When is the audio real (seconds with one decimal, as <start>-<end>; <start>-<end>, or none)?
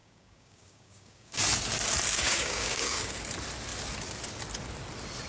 1.4-2.1; 3.1-5.3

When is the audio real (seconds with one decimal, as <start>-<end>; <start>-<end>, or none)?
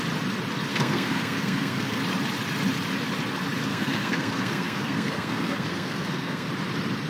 0.0-0.7; 2.0-3.7; 6.5-7.1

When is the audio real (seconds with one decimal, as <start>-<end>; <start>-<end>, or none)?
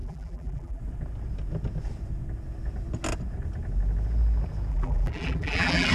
0.8-4.7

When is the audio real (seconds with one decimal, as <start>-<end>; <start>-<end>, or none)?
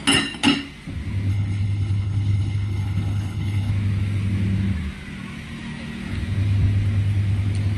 0.0-1.3; 3.7-7.8